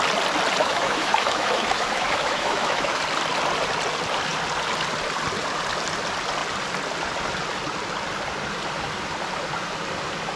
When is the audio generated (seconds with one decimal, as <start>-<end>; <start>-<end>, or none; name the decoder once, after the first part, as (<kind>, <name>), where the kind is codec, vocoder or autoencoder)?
0.6-3.0 (autoencoder, DAC-VAE)